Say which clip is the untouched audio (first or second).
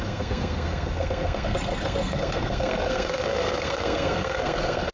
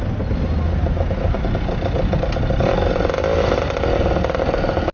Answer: second